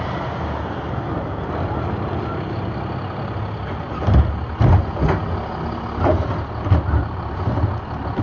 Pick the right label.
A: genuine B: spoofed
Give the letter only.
A